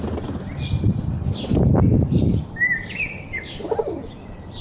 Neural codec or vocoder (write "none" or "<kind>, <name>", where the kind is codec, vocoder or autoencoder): none